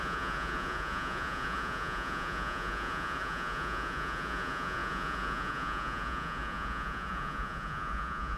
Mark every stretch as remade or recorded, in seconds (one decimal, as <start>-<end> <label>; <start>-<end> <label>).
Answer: 0.0-8.4 remade